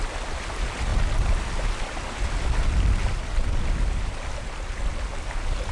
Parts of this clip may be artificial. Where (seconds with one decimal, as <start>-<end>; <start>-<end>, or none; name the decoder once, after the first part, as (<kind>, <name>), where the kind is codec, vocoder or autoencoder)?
none